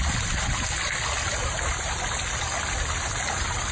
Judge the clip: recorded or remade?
recorded